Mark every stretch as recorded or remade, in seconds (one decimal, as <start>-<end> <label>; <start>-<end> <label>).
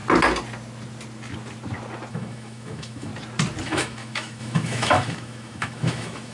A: 0.0-2.1 recorded; 2.1-3.1 remade; 3.1-3.6 recorded; 3.6-6.3 remade